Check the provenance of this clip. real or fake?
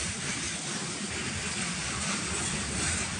fake